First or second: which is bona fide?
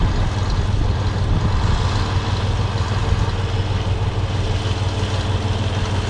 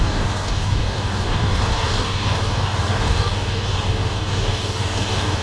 first